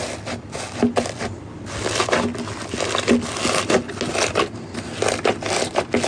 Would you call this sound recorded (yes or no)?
yes